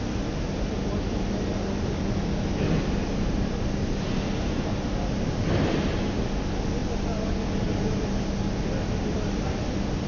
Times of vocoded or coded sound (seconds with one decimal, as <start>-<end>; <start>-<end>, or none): none